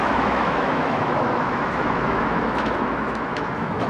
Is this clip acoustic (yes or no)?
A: no